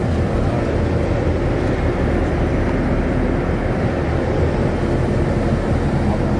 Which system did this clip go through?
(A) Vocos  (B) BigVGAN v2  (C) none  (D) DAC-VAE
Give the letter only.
C